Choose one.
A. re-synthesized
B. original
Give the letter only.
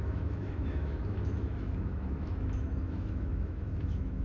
A